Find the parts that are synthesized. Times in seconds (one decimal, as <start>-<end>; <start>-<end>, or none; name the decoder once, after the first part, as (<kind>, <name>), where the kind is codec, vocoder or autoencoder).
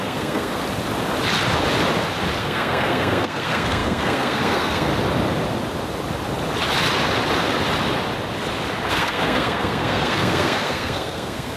0.0-0.6 (codec, SNAC); 2.4-4.9; 8.9-11.6